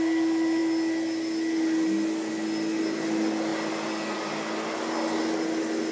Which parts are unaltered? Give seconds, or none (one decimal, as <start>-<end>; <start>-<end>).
0.0-5.9